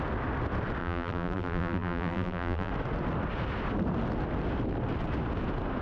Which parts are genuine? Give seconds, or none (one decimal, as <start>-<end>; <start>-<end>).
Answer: 0.0-0.8; 2.7-5.8